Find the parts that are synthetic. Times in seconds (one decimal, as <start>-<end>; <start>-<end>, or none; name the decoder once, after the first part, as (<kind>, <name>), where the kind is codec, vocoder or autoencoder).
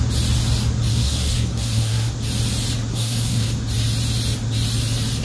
0.9-2.1 (codec, SNAC); 2.9-3.5